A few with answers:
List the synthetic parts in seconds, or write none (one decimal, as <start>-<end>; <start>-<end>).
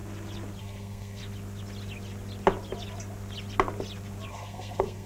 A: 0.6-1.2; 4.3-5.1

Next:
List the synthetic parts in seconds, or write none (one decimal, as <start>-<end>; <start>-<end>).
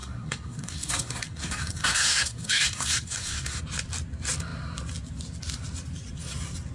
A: 0.0-3.6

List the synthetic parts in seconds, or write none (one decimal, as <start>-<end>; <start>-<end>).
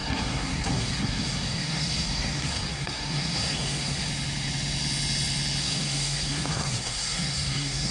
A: 0.0-4.1; 5.6-7.9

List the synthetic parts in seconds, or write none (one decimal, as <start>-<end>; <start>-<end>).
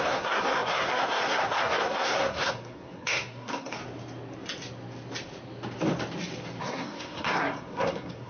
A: 0.0-3.8; 6.6-8.3